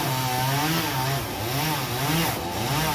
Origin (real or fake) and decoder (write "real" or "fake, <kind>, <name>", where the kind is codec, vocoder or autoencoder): real